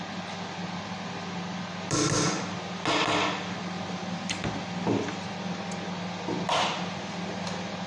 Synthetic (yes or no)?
no